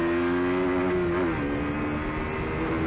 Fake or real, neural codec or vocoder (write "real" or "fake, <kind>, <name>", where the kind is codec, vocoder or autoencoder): real